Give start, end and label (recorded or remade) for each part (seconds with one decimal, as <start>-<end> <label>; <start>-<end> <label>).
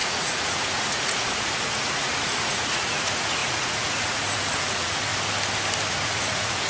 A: 0.0-5.1 remade; 5.1-5.9 recorded; 5.9-6.7 remade